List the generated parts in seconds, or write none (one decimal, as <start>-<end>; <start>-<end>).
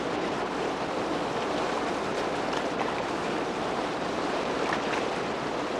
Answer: 2.1-5.1